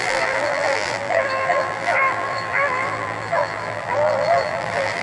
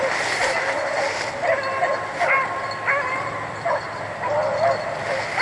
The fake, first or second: first